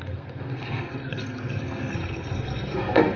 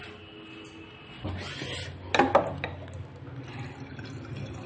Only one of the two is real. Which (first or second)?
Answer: second